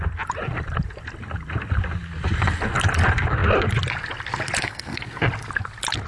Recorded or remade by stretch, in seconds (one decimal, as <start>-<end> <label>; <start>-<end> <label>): 0.0-4.6 recorded; 4.6-5.2 remade; 5.2-6.1 recorded